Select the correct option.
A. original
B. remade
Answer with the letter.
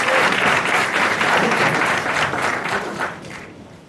B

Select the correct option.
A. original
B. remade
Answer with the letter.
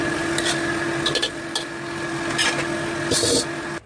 A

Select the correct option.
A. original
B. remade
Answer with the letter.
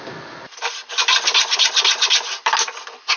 A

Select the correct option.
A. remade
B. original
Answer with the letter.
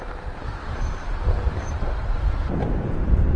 A